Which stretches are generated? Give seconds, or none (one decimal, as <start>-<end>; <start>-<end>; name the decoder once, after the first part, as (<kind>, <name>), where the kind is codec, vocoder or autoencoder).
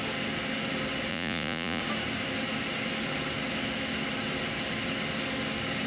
1.1-1.8 (vocoder, Vocos)